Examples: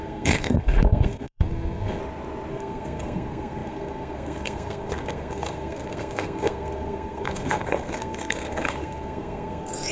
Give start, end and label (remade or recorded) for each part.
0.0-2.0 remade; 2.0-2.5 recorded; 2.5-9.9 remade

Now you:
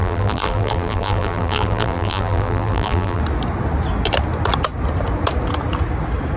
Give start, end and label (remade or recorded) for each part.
0.0-3.2 remade; 3.2-6.4 recorded

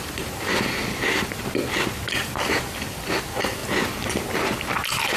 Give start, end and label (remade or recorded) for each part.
0.0-5.2 recorded

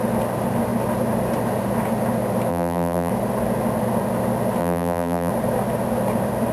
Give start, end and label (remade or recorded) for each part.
0.0-2.5 recorded; 2.5-3.1 remade; 3.1-4.6 recorded; 4.6-5.3 remade; 5.3-6.5 recorded

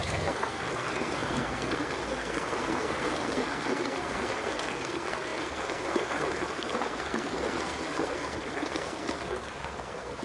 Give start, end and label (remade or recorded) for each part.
0.0-10.2 remade

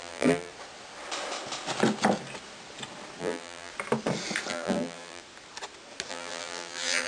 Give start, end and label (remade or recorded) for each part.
0.0-0.5 remade; 0.5-3.2 recorded; 3.2-3.7 remade; 3.7-4.5 recorded; 4.5-5.2 remade; 5.2-6.1 recorded; 6.1-7.1 remade

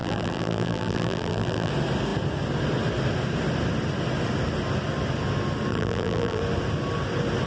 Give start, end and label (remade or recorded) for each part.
0.0-1.7 remade; 1.7-5.7 recorded; 5.7-6.4 remade; 6.4-7.5 recorded

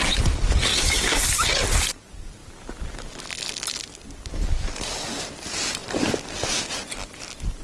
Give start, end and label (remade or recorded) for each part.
0.0-0.7 recorded; 0.7-1.2 remade; 1.2-7.6 recorded